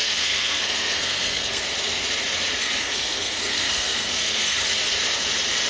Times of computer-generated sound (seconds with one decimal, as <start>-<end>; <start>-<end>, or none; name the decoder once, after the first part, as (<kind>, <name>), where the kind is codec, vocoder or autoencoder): 0.0-1.6 (codec, SNAC); 2.6-4.6